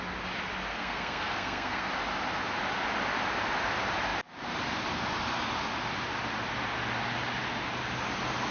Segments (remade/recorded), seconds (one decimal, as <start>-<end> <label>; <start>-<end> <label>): 0.0-0.7 recorded; 0.7-1.9 remade; 1.9-8.5 recorded